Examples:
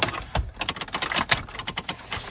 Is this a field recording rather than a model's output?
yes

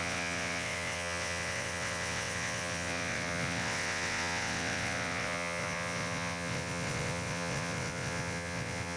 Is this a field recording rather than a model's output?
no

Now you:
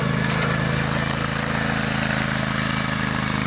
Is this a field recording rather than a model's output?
yes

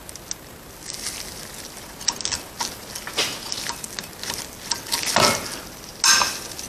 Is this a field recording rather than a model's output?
yes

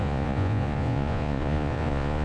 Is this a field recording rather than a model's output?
no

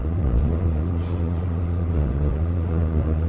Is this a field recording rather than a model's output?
no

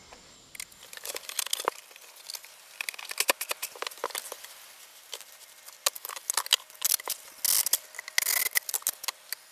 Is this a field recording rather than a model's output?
yes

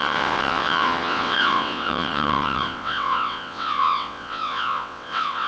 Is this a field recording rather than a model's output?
no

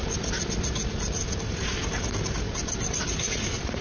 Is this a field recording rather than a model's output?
yes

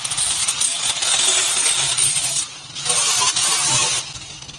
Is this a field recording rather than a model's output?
yes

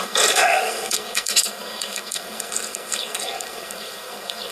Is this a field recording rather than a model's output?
no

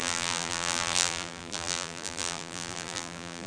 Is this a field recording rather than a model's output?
no